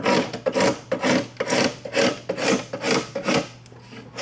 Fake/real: real